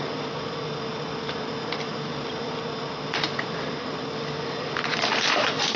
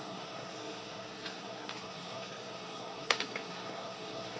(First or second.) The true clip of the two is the first